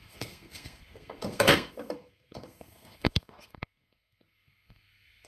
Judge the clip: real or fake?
fake